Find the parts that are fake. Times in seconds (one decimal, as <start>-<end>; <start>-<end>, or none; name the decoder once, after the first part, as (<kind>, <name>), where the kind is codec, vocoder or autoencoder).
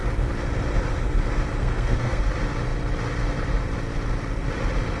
1.6-2.2 (codec, SNAC)